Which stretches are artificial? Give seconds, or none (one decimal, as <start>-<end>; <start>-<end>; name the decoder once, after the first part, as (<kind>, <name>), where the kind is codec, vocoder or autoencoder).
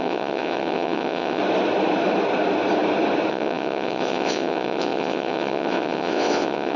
0.0-1.4 (vocoder, WaveNeXt); 3.3-6.8